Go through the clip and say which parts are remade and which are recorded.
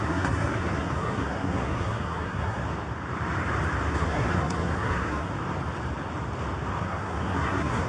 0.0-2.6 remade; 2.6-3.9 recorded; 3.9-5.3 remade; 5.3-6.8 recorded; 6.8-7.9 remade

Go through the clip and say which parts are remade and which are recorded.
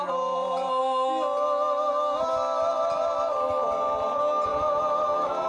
0.0-5.5 recorded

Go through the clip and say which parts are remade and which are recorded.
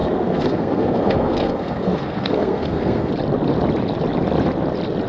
0.0-3.1 remade; 3.1-5.1 recorded